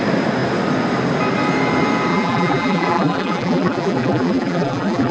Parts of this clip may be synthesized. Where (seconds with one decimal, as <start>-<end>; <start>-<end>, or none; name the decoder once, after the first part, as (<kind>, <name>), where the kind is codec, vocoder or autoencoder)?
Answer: 2.1-5.1 (vocoder, BigVGAN v2)